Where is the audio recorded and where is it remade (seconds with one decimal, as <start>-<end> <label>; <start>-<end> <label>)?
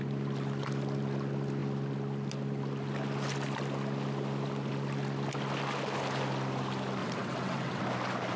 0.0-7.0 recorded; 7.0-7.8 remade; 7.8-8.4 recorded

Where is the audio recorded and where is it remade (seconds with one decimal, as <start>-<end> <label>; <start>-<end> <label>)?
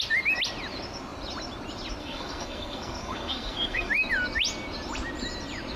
0.0-2.0 recorded; 2.0-3.9 remade; 3.9-5.8 recorded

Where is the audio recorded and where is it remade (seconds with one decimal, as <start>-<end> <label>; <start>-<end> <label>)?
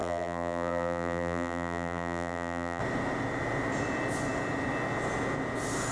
0.0-2.8 remade; 2.8-5.9 recorded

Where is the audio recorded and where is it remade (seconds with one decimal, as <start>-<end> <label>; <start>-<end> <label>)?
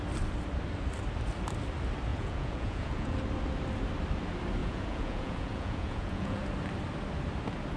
0.0-2.1 recorded; 2.1-3.2 remade; 3.2-4.6 recorded; 4.6-6.4 remade; 6.4-7.8 recorded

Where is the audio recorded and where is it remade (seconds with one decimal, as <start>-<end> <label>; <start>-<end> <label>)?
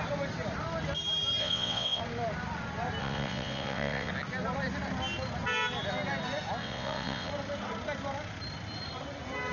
0.0-1.4 recorded; 1.4-2.0 remade; 2.0-3.0 recorded; 3.0-4.1 remade; 4.1-6.6 recorded; 6.6-7.3 remade; 7.3-9.5 recorded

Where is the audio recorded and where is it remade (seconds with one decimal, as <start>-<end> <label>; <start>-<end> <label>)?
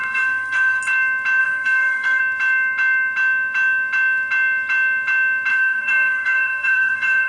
0.0-0.8 remade; 0.8-1.4 recorded; 1.4-2.2 remade; 2.2-5.5 recorded; 5.5-7.3 remade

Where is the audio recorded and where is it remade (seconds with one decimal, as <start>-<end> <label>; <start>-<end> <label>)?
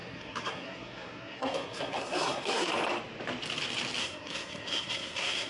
0.0-2.7 remade; 2.7-4.0 recorded; 4.0-5.5 remade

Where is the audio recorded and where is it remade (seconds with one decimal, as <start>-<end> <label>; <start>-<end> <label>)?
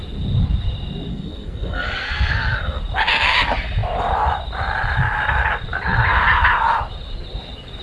0.0-1.1 recorded; 1.1-2.8 remade; 2.8-7.8 recorded